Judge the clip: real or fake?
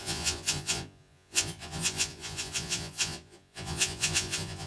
fake